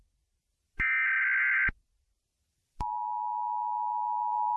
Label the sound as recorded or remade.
recorded